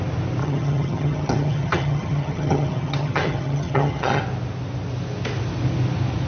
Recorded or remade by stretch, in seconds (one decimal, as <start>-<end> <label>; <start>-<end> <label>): 0.0-0.4 recorded; 0.4-4.2 remade; 4.2-6.3 recorded